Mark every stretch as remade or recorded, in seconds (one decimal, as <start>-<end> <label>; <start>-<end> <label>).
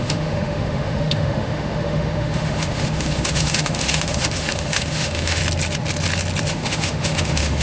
0.0-5.4 remade; 5.4-6.5 recorded; 6.5-7.6 remade